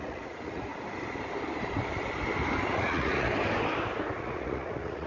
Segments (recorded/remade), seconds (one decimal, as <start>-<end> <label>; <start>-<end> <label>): 0.0-0.7 remade; 0.7-2.6 recorded; 2.6-3.3 remade; 3.3-4.2 recorded; 4.2-5.1 remade